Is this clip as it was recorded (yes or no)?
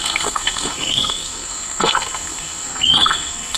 no